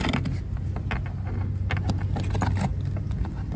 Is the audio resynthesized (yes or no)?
no